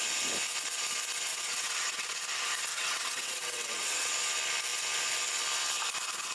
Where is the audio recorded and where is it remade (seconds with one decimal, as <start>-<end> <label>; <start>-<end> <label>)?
0.0-1.3 recorded; 1.3-2.2 remade; 2.2-2.7 recorded; 2.7-4.1 remade; 4.1-6.3 recorded